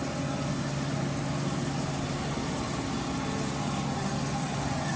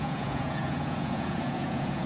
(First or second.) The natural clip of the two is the first